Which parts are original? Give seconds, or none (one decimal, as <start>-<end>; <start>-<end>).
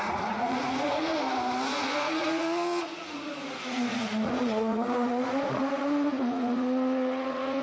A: 1.1-1.7